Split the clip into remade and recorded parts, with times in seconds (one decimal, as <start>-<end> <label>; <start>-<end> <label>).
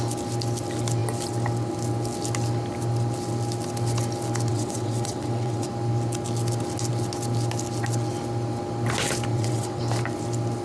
0.0-4.5 recorded; 4.5-5.7 remade; 5.7-9.3 recorded; 9.3-9.8 remade; 9.8-10.6 recorded